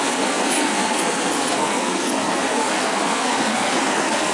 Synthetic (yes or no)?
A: yes